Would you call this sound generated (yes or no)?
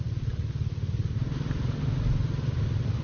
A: no